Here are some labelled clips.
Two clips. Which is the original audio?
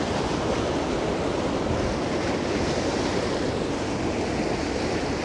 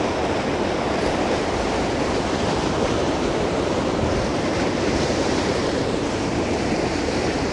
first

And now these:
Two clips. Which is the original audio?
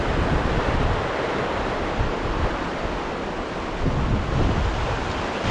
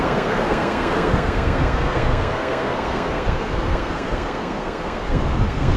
first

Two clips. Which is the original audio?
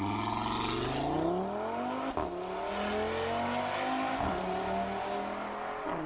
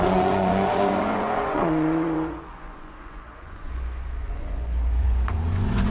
first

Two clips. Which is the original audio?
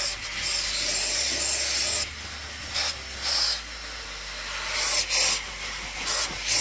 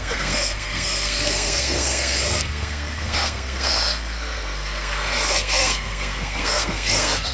first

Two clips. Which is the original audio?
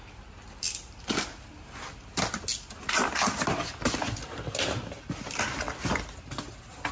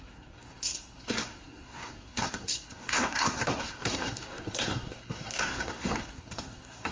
first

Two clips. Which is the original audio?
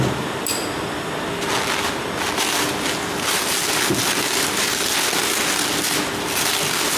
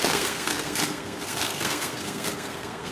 first